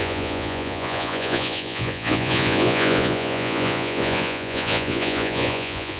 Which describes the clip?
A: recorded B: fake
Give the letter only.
B